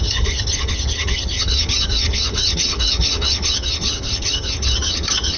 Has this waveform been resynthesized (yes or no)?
yes